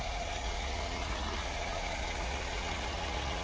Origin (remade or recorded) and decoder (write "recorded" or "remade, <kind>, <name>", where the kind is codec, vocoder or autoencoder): remade, vocoder, Vocos